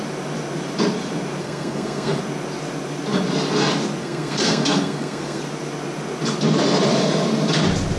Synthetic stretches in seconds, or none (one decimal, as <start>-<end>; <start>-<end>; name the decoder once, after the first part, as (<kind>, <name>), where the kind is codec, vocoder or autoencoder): 1.4-2.2 (codec, SNAC); 4.0-5.4